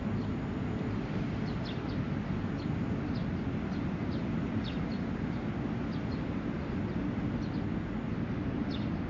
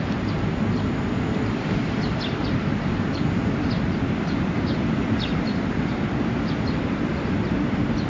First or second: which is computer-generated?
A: second